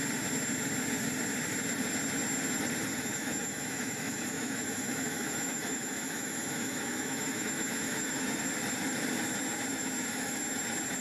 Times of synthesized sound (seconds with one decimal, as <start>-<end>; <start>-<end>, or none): 3.1-8.4; 9.7-10.6